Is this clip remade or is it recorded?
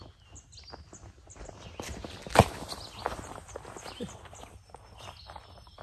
recorded